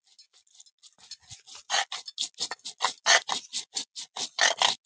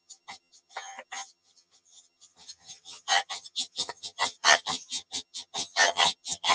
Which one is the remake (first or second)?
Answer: second